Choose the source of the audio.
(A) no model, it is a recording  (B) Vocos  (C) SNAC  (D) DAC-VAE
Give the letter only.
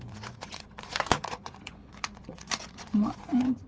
B